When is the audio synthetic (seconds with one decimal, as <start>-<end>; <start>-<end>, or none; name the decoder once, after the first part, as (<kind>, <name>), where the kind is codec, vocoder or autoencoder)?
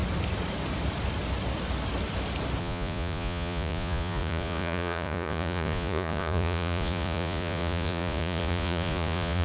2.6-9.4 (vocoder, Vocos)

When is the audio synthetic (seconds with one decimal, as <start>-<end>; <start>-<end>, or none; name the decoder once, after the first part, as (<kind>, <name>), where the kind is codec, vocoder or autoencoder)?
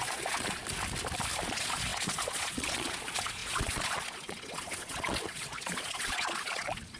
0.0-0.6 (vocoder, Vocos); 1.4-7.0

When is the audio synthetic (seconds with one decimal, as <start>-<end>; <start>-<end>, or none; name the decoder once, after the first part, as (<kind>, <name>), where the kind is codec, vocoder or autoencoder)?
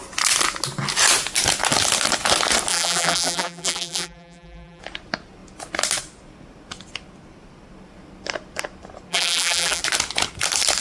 2.7-4.8 (vocoder, BigVGAN v2); 9.1-9.8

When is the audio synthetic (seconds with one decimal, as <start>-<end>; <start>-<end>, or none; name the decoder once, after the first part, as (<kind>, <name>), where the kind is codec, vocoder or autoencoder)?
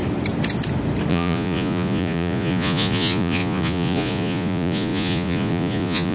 1.1-6.1 (vocoder, Vocos)